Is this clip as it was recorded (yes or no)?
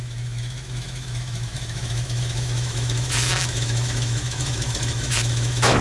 no